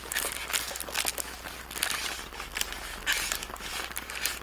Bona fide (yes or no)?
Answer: yes